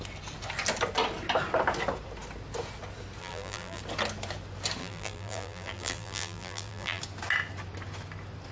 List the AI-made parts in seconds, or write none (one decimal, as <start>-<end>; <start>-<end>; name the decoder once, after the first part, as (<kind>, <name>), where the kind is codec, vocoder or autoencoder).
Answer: 3.2-3.8 (vocoder, BigVGAN v2); 4.8-7.0